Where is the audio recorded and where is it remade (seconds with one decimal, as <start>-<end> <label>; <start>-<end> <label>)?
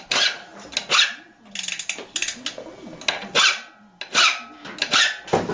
0.0-5.5 recorded